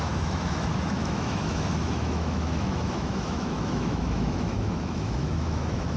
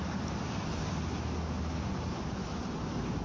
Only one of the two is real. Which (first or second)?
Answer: second